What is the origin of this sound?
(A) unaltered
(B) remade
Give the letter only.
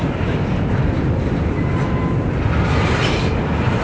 A